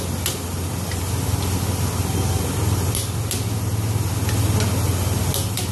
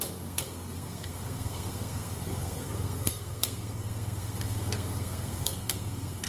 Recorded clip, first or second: first